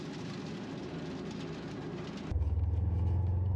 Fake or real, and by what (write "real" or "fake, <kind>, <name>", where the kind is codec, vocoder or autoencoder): real